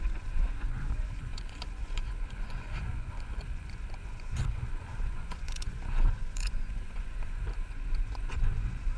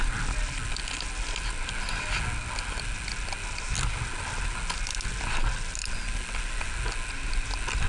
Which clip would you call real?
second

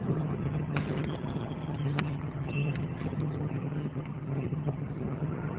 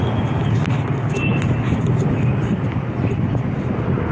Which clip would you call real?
second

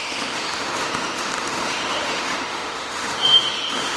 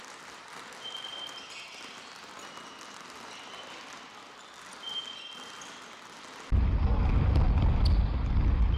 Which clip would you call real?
second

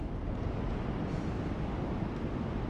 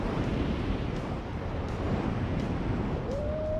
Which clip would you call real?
first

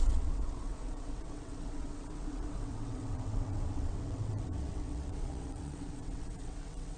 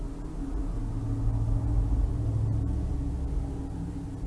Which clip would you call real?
second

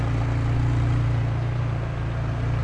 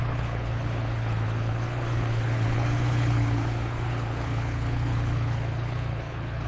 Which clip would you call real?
first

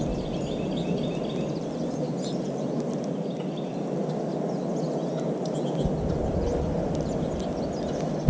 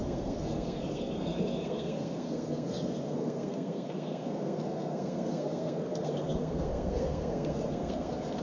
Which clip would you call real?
first